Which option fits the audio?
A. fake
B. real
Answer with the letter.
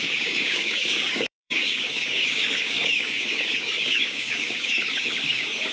A